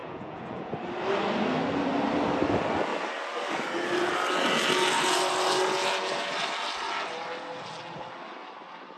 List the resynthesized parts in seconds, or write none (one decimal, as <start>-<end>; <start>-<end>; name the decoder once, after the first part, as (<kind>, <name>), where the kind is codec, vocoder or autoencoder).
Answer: 0.0-0.7 (vocoder, Vocos)